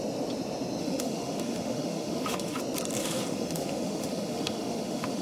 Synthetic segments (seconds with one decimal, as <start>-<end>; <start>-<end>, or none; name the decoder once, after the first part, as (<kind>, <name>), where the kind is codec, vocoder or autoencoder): 0.8-2.6 (autoencoder, DAC-VAE); 3.0-5.2